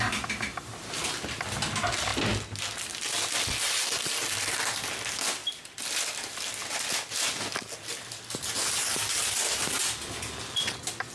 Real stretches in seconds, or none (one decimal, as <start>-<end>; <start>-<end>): 0.0-5.4; 6.2-11.1